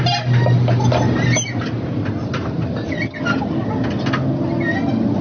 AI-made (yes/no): no